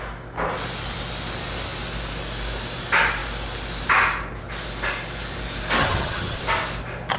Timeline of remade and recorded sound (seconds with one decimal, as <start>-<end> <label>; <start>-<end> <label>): 0.0-5.8 recorded; 5.8-6.4 remade; 6.4-7.2 recorded